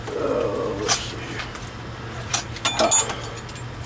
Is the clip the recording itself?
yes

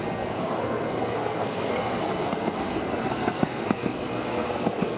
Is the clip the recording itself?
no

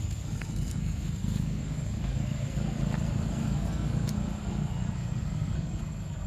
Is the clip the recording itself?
no